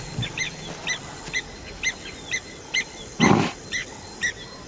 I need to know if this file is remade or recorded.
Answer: recorded